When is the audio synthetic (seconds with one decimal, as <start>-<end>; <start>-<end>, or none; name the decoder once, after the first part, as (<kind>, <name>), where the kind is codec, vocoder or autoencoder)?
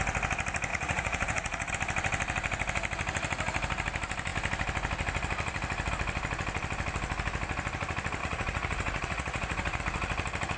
0.7-1.7 (vocoder, Vocos); 8.2-9.8